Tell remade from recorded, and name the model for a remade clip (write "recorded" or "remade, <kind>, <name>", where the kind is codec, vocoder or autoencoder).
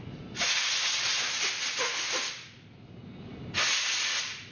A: recorded